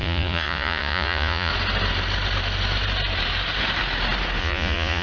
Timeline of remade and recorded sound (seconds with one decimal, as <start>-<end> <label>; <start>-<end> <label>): 0.0-1.5 remade; 1.5-4.4 recorded; 4.4-5.0 remade